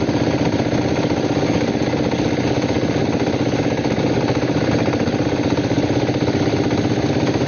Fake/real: real